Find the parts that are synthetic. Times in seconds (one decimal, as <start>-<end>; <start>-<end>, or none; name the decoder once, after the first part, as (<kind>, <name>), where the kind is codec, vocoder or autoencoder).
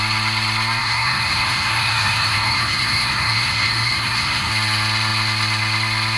0.8-4.5 (codec, SNAC)